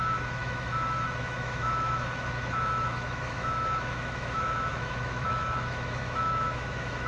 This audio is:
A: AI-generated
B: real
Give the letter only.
A